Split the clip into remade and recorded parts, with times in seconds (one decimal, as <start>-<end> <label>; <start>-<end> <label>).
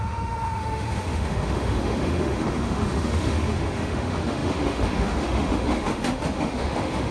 0.0-7.1 remade